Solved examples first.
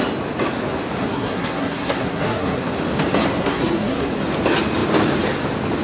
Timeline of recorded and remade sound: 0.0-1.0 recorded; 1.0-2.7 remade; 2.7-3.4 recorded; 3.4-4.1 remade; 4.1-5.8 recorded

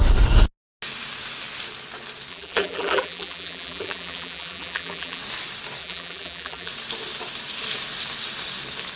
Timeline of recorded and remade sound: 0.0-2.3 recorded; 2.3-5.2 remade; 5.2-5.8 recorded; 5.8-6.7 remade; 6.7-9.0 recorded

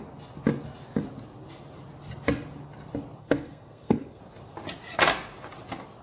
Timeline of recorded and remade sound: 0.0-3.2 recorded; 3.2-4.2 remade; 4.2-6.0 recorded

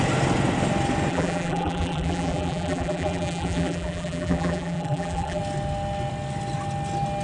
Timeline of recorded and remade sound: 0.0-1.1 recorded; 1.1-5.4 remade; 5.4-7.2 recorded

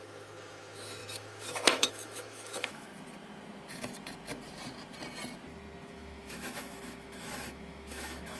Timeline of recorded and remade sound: 0.0-2.9 remade; 2.9-5.9 recorded; 5.9-8.4 remade

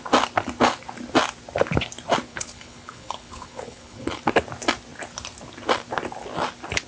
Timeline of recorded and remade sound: 0.0-2.3 recorded; 2.3-4.2 remade; 4.2-6.9 recorded